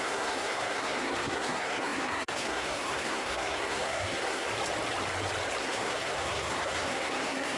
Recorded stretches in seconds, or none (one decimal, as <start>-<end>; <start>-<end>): 4.5-5.6